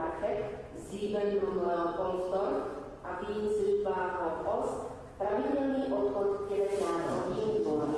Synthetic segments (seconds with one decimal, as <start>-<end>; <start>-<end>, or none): 0.0-2.7; 3.5-5.5; 7.1-8.0